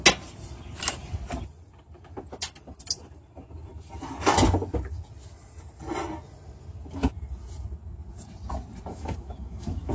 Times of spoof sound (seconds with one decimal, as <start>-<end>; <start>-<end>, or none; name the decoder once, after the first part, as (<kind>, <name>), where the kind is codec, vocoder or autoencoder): 8.9-9.9 (autoencoder, DAC-VAE)